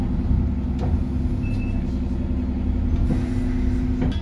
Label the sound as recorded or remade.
recorded